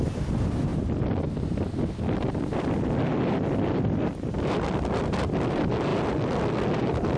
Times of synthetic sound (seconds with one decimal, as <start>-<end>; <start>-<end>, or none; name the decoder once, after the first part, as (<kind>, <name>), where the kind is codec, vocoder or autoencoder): none